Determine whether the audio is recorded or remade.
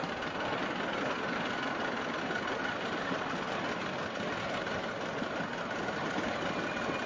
recorded